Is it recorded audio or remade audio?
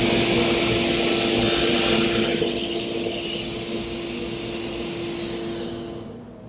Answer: recorded